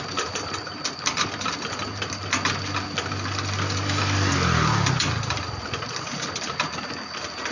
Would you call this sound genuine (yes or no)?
yes